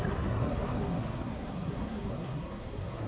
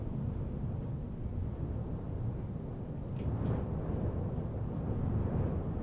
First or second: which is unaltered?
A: second